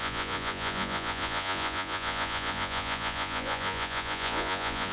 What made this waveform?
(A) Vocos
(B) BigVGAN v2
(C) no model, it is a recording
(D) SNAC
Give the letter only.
A